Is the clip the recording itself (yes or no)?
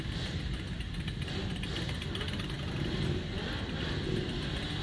yes